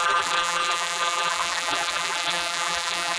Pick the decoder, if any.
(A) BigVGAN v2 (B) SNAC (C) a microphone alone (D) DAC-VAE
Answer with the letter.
A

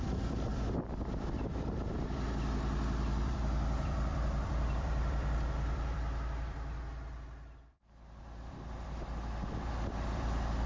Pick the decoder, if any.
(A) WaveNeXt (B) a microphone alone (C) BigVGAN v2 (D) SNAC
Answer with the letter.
C